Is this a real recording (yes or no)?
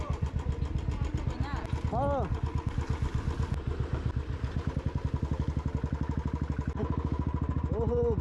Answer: yes